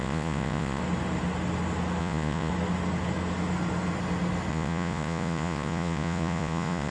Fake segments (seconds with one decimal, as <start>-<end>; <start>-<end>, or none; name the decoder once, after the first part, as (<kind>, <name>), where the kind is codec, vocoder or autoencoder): 0.0-0.8 (vocoder, Vocos); 2.0-2.5; 4.5-6.9